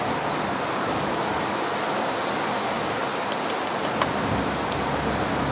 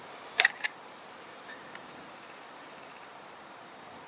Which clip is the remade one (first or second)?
second